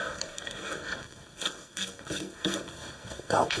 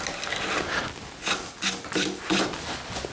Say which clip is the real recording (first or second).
second